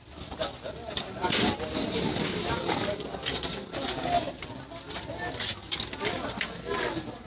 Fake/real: fake